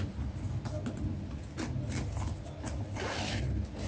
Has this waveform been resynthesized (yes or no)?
no